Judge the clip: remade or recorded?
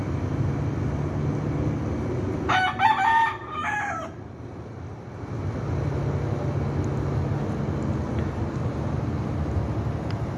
recorded